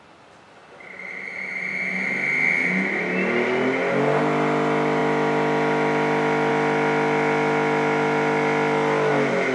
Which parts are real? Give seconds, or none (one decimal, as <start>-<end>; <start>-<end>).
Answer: 0.0-9.5